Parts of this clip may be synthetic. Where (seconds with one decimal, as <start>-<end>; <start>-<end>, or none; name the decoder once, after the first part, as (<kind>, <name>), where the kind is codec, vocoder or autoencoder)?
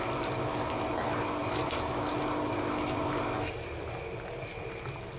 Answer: none